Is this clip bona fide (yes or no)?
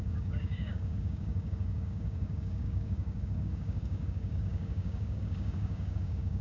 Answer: no